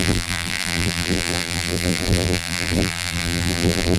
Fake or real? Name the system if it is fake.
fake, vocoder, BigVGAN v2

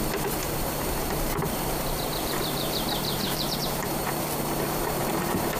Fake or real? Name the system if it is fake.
fake, vocoder, BigVGAN v2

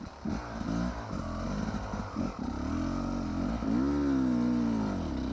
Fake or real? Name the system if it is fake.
real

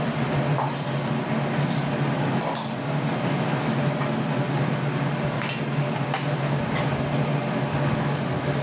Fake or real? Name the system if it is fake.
real